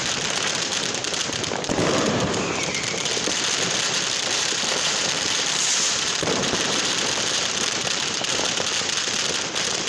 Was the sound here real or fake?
fake